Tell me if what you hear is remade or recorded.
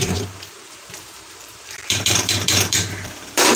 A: remade